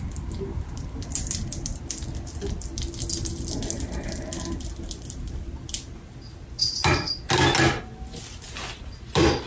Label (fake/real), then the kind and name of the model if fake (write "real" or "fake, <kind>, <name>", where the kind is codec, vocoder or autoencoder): real